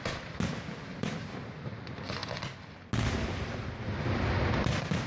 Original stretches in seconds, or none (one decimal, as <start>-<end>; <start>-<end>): 0.0-0.9; 1.7-5.1